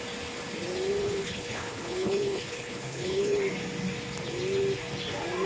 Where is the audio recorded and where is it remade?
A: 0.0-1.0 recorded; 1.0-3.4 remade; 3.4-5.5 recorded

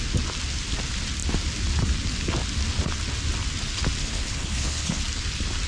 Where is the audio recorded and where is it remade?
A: 0.0-4.0 recorded; 4.0-5.0 remade; 5.0-5.7 recorded

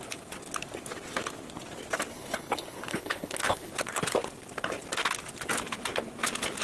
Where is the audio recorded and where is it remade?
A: 0.0-2.1 recorded; 2.1-3.7 remade; 3.7-6.6 recorded